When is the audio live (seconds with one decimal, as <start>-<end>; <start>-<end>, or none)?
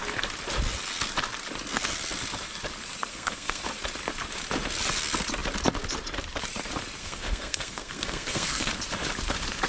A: 0.0-3.1; 3.6-7.0; 8.7-9.7